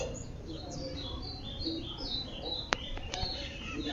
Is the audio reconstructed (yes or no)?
yes